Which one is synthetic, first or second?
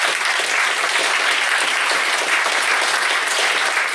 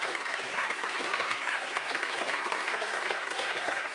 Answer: second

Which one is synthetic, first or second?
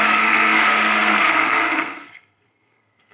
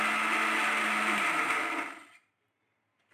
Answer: first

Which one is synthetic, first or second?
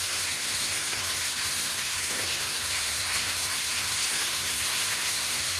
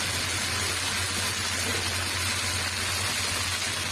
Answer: first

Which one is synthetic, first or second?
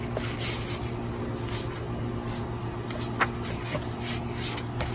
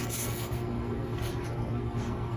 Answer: second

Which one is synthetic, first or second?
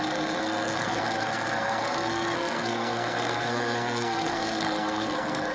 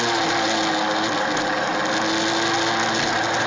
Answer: first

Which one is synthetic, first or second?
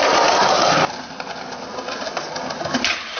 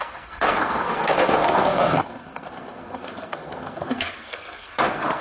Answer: second